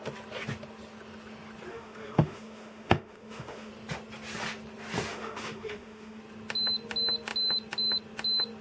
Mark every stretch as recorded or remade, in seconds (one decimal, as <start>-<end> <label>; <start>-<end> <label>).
0.0-1.7 recorded; 1.7-3.7 remade; 3.7-5.1 recorded; 5.1-6.2 remade; 6.2-8.6 recorded